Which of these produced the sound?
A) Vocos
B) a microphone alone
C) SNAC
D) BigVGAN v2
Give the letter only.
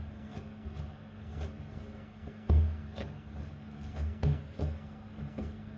C